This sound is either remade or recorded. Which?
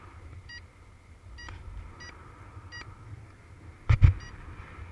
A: recorded